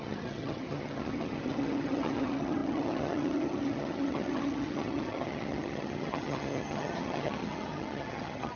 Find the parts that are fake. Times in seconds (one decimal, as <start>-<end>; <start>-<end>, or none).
0.0-8.6